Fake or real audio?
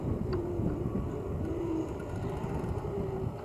real